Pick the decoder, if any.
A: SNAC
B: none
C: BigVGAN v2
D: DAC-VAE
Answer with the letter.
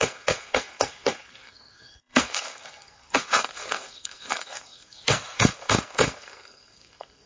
A